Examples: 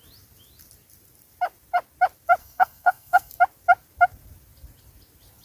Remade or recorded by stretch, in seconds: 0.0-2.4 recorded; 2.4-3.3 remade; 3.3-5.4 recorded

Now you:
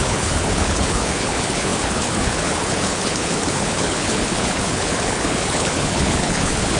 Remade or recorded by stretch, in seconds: 0.0-6.8 remade

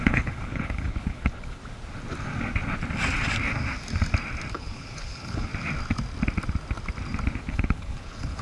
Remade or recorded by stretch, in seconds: 0.0-1.6 remade; 1.6-4.5 recorded; 4.5-5.5 remade; 5.5-7.5 recorded; 7.5-8.4 remade

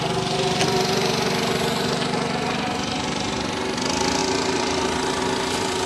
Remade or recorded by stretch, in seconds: 0.0-4.2 recorded; 4.2-5.2 remade; 5.2-5.9 recorded

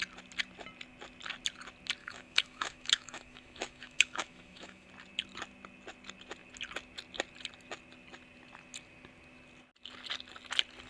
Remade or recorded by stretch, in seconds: 0.0-2.0 recorded; 2.0-4.9 remade; 4.9-10.9 recorded